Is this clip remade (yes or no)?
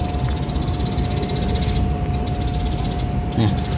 no